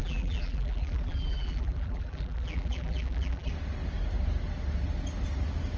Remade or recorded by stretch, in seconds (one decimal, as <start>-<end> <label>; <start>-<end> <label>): 0.0-3.5 remade; 3.5-5.8 recorded